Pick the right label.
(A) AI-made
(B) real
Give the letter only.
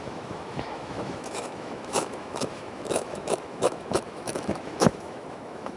A